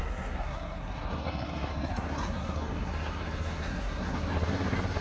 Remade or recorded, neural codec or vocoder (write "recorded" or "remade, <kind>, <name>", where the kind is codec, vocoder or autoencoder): remade, codec, SNAC